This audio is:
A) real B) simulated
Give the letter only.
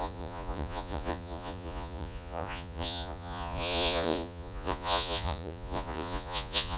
B